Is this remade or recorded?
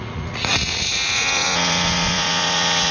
remade